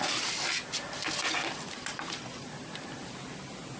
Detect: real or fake fake